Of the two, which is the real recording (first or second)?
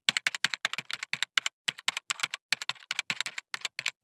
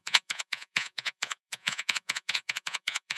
first